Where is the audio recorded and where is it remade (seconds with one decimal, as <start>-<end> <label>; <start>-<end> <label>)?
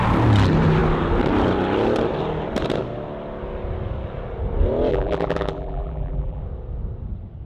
0.0-4.9 recorded; 4.9-6.4 remade; 6.4-7.5 recorded